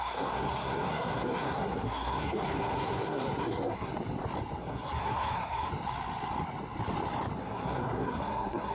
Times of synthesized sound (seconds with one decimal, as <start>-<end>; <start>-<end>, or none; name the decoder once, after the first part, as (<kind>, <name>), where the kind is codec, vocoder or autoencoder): 0.0-3.9 (codec, SNAC); 4.6-5.7; 7.4-8.7